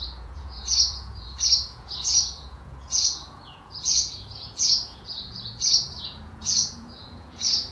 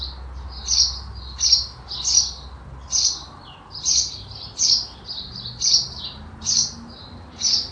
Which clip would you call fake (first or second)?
first